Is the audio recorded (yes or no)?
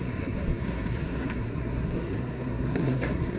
no